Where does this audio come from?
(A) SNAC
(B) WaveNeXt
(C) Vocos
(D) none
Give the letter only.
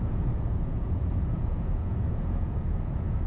C